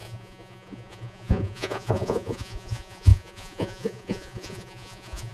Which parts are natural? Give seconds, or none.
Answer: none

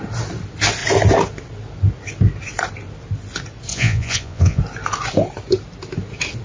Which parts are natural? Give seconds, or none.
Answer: 0.0-3.7; 4.6-6.4

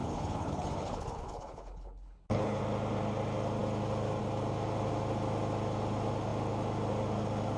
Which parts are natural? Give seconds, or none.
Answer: 2.6-7.6

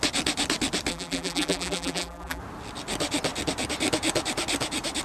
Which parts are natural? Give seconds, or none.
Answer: 0.0-0.9; 2.4-5.0

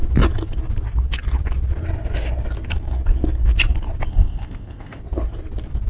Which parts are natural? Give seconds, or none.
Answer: 0.0-4.1; 5.0-5.9

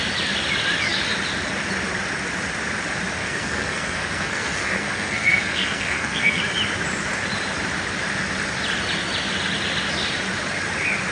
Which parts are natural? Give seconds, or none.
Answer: 0.0-3.2; 6.4-11.1

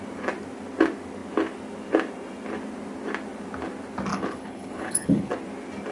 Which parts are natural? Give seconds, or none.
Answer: 0.0-4.1; 5.3-5.9